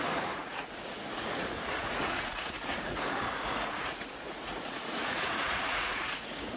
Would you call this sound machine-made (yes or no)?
yes